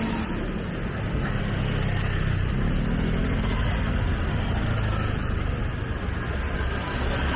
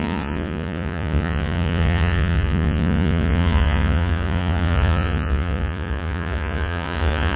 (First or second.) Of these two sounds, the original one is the first